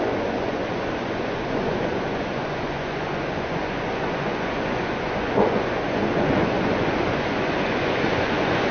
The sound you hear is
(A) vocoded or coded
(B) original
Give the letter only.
A